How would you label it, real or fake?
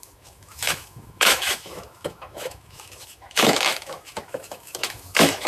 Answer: fake